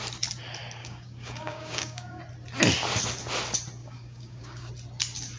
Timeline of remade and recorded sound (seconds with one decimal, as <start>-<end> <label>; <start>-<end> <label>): 0.0-0.8 recorded; 0.8-2.2 remade; 2.2-3.8 recorded; 3.8-4.7 remade; 4.7-5.4 recorded

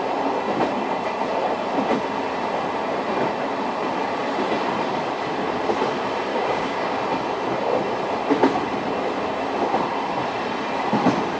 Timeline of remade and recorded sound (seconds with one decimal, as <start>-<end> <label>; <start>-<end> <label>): 0.0-6.3 recorded; 6.3-7.0 remade; 7.0-11.4 recorded

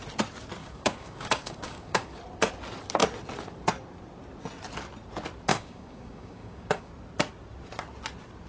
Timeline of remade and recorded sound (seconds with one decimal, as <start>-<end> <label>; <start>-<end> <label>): 0.0-0.6 recorded; 0.6-2.2 remade; 2.2-5.5 recorded; 5.5-6.9 remade; 6.9-8.5 recorded

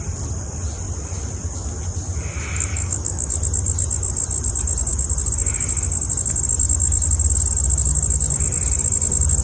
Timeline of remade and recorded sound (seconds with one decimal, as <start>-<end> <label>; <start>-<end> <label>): 0.0-2.7 recorded; 2.7-3.3 remade; 3.3-9.4 recorded

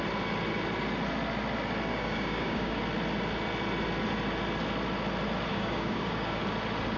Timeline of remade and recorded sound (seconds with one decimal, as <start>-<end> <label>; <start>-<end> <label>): 0.0-1.9 recorded; 1.9-2.8 remade; 2.8-5.5 recorded; 5.5-6.4 remade; 6.4-7.0 recorded